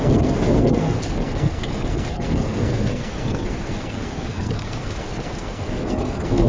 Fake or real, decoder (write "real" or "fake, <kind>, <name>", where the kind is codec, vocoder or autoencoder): fake, codec, SNAC